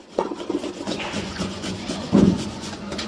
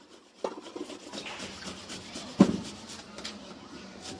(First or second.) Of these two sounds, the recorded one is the second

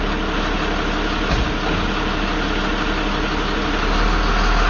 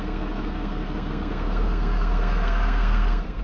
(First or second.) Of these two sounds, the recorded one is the first